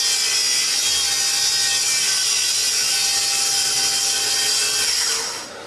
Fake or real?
real